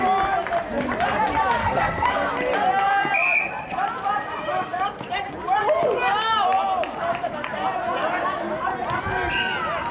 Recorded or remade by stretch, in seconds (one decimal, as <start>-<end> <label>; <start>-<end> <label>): 0.0-1.6 recorded; 1.6-2.3 remade; 2.3-9.9 recorded